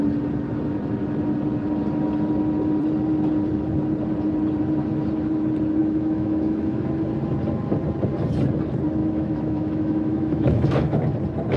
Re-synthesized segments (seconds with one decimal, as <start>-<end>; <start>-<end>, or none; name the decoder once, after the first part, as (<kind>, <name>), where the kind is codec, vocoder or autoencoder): 5.8-6.8 (autoencoder, DAC-VAE); 9.0-11.0